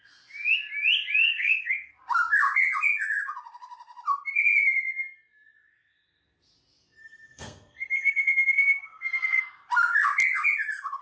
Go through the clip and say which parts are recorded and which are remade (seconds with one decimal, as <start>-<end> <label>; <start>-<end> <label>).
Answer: 0.0-1.2 recorded; 1.2-1.9 remade; 1.9-7.0 recorded; 7.0-9.4 remade; 9.4-11.0 recorded

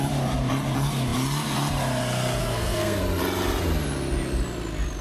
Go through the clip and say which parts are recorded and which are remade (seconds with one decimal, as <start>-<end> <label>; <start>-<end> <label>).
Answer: 0.0-2.4 recorded; 2.4-3.0 remade; 3.0-5.0 recorded

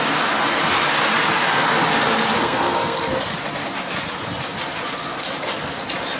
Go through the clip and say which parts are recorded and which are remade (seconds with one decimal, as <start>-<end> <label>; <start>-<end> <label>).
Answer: 0.0-2.4 recorded; 2.4-3.0 remade; 3.0-6.2 recorded